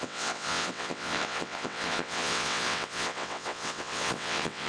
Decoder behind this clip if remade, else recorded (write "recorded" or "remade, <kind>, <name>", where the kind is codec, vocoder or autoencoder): remade, vocoder, WaveNeXt